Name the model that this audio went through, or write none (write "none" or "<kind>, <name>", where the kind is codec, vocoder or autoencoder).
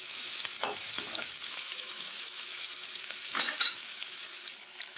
autoencoder, DAC-VAE